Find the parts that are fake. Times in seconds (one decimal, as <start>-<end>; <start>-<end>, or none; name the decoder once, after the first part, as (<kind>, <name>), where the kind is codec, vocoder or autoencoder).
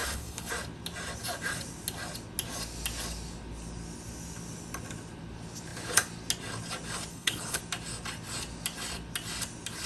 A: 0.0-0.5 (codec, HILCodec); 7.1-7.6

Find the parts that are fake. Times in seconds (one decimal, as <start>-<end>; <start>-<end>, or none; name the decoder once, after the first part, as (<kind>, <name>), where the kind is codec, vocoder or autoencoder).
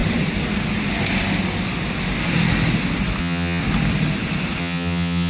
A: 3.2-3.6 (vocoder, HiFi-GAN); 4.6-5.3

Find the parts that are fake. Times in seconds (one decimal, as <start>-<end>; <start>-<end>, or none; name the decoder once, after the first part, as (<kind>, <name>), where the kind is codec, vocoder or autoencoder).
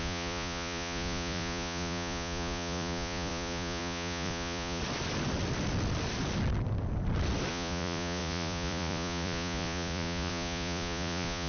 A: 0.0-4.8 (vocoder, Vocos); 7.5-11.5